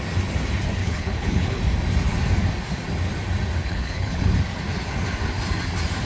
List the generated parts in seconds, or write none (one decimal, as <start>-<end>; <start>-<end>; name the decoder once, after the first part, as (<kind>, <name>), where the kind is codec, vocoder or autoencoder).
0.8-1.6 (codec, HILCodec); 3.6-4.3